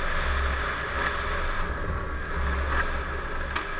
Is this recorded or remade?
recorded